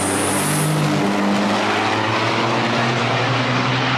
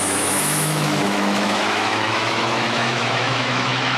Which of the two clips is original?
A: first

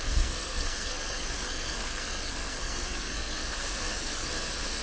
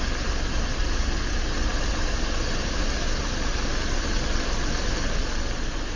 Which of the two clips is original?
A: second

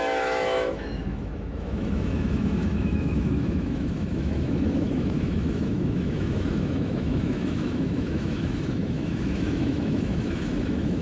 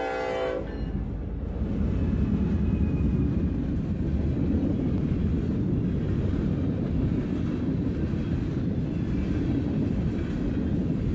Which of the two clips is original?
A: second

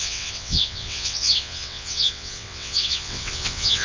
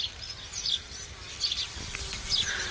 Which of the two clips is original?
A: second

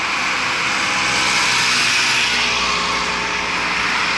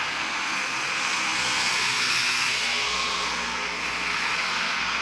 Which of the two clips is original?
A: first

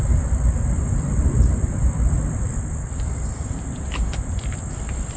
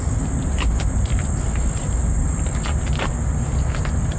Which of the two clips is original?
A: second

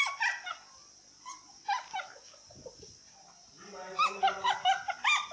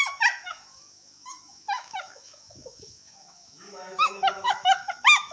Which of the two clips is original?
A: first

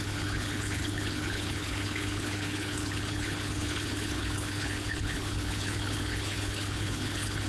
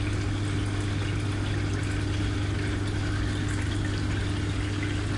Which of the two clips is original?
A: second